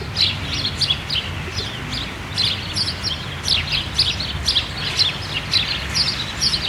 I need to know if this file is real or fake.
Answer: real